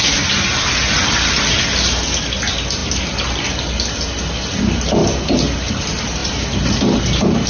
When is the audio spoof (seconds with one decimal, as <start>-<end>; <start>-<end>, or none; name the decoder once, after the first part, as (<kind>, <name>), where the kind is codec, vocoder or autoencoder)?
5.0-5.7 (vocoder, BigVGAN v2); 6.2-7.0